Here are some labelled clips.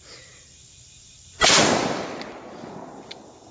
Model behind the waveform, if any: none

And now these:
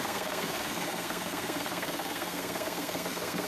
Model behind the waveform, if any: codec, SNAC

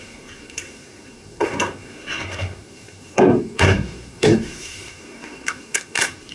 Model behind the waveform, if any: codec, SNAC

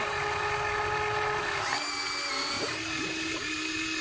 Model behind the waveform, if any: none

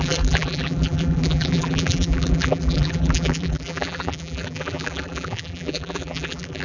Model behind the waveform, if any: vocoder, BigVGAN v2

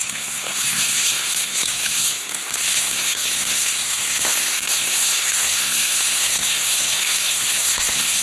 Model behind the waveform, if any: codec, SNAC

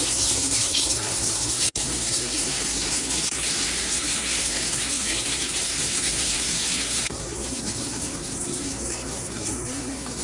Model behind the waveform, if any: codec, SNAC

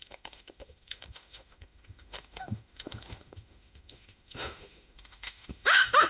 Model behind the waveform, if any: autoencoder, DAC-VAE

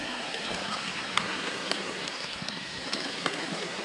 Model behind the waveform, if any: codec, SNAC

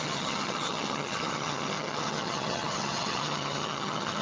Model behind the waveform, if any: vocoder, HiFi-GAN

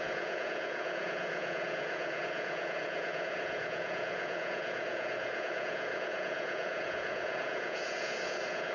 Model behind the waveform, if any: vocoder, Vocos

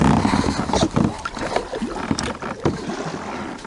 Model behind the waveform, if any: none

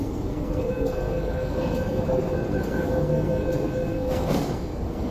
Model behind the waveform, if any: codec, SNAC